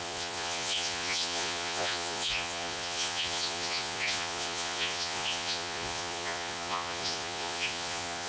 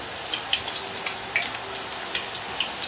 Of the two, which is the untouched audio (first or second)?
second